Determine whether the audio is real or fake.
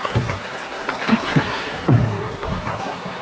fake